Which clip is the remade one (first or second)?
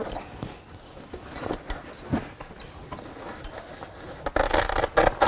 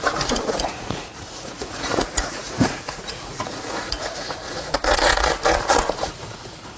second